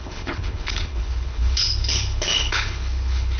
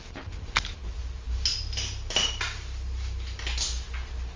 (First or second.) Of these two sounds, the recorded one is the second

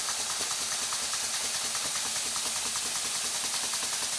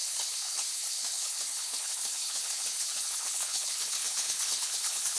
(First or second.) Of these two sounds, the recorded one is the first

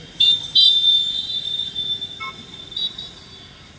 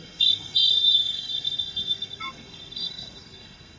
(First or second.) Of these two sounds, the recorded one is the first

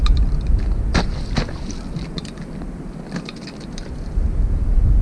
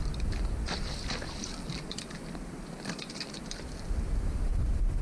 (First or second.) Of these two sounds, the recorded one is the first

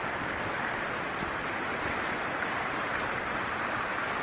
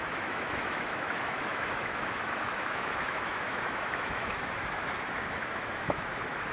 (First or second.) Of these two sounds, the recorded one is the first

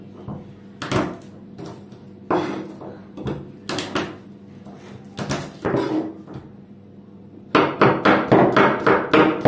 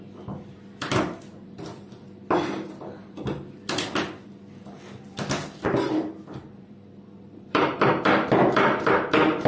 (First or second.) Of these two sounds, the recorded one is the first